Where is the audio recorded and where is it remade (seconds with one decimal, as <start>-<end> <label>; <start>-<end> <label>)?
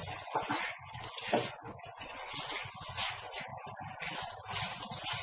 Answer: 0.0-3.1 remade; 3.1-5.2 recorded